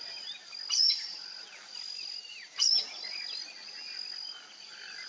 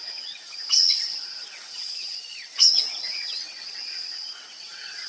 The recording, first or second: first